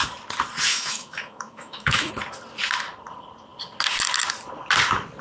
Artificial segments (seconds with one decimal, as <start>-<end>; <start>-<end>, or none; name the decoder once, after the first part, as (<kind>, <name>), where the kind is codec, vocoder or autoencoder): 0.7-2.1 (autoencoder, DAC-VAE)